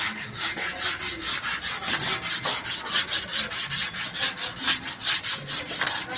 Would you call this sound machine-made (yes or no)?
no